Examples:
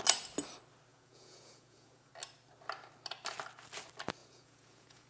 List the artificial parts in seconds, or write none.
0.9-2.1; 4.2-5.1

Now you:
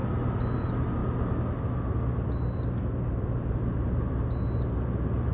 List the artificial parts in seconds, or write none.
none